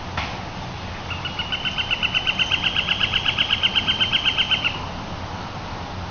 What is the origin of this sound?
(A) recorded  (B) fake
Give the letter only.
A